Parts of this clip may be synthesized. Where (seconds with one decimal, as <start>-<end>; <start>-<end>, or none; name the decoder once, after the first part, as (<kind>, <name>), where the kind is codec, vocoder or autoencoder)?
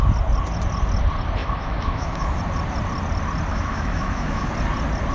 1.4-2.4 (autoencoder, DAC-VAE); 3.5-4.5